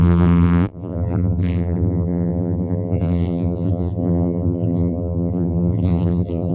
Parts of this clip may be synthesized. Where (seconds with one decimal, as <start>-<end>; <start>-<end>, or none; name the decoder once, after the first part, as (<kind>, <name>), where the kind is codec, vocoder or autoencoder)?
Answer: 0.0-6.5 (vocoder, BigVGAN v2)